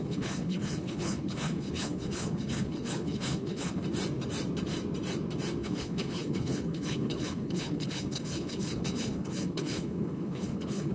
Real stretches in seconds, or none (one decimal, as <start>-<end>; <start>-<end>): 3.8-5.6